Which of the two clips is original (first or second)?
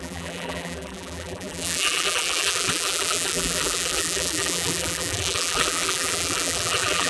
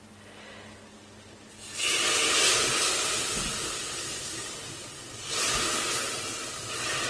second